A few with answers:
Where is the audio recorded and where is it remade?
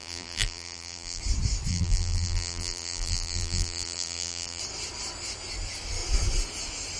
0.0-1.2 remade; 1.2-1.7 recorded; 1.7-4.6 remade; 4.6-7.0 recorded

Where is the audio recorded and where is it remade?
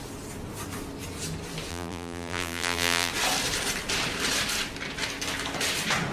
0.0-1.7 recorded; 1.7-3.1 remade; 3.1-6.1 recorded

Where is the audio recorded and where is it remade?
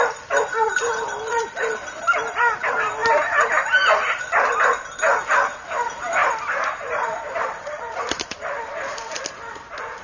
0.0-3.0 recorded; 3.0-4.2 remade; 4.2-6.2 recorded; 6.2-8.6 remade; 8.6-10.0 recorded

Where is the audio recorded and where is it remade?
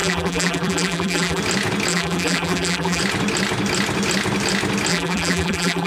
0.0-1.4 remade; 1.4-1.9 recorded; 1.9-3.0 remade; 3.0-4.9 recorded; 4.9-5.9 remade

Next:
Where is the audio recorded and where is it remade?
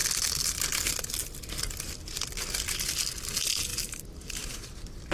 0.0-3.7 recorded; 3.7-5.1 remade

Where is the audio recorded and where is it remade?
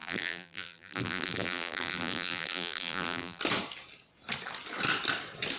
0.0-3.4 remade; 3.4-5.6 recorded